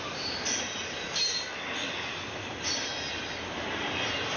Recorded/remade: recorded